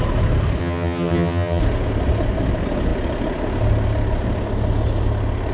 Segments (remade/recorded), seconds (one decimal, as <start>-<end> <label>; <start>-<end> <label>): 0.0-0.6 recorded; 0.6-1.6 remade; 1.6-5.5 recorded